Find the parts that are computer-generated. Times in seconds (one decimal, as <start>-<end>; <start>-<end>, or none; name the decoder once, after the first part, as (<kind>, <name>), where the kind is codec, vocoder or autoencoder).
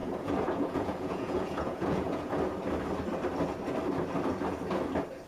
0.0-2.3 (vocoder, Vocos)